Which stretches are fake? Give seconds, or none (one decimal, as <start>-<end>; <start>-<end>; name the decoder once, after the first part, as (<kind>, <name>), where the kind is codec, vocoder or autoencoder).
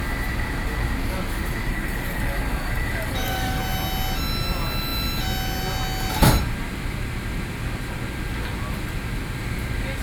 1.7-3.6 (codec, DAC)